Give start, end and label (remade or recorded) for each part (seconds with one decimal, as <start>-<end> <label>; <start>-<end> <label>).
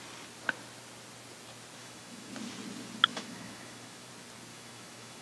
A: 0.0-1.8 recorded; 1.8-2.3 remade; 2.3-3.1 recorded; 3.1-4.1 remade; 4.1-4.5 recorded; 4.5-5.2 remade